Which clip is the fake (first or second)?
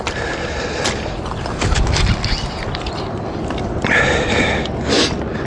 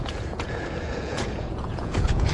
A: second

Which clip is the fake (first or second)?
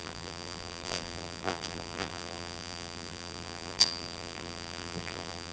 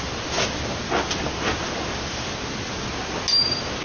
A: first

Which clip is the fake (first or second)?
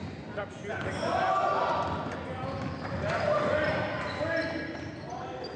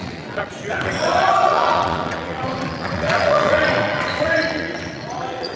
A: second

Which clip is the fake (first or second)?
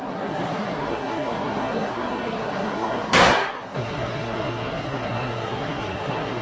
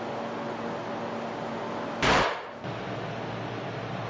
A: first